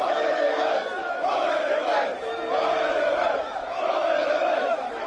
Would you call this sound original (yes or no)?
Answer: no